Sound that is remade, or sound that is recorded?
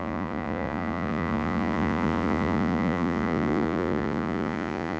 remade